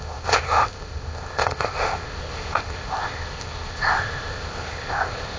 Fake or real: fake